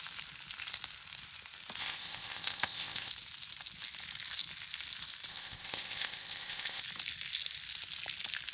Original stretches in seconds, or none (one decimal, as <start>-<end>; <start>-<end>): 0.0-1.8; 3.1-5.3; 6.8-8.5